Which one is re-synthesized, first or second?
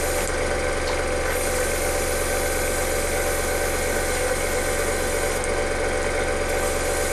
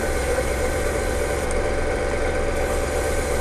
second